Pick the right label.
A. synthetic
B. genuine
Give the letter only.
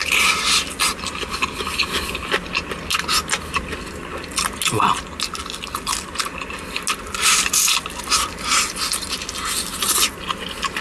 B